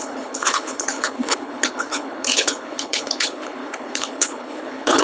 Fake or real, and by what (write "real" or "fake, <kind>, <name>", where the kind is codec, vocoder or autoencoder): fake, codec, HILCodec